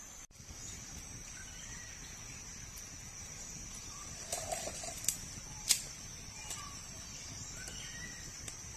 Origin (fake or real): real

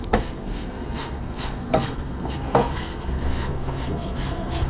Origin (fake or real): fake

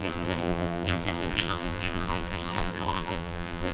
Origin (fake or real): fake